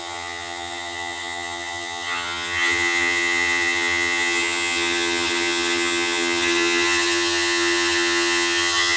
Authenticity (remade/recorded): remade